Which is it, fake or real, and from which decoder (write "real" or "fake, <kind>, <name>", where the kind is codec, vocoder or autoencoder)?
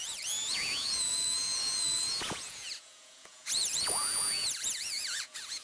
fake, vocoder, Vocos